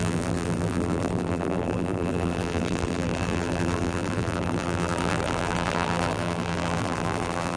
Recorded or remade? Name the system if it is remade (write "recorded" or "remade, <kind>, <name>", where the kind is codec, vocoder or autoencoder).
remade, vocoder, BigVGAN v2